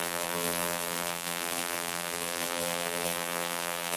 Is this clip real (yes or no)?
no